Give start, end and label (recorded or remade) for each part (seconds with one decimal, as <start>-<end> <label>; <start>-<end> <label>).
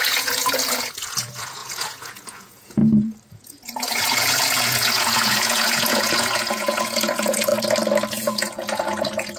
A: 0.0-2.8 remade; 2.8-3.3 recorded; 3.3-7.5 remade; 7.5-8.1 recorded; 8.1-9.4 remade